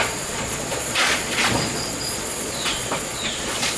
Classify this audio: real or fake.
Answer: fake